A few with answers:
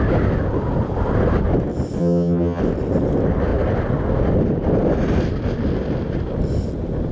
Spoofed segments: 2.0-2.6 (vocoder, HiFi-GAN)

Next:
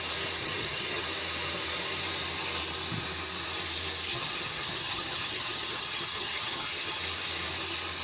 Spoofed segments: 0.4-1.0 (vocoder, HiFi-GAN); 4.1-7.0